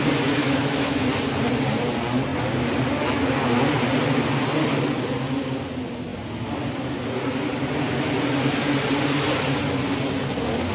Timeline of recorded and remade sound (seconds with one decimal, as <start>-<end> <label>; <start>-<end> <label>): 0.0-0.4 recorded; 0.4-1.0 remade; 1.0-10.7 recorded